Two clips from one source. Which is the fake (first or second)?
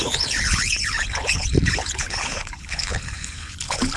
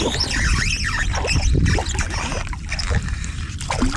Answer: first